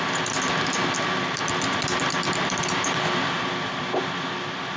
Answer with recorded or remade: remade